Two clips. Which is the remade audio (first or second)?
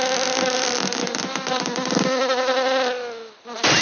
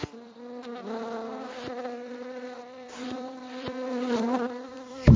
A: second